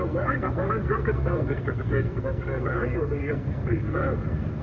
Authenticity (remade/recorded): remade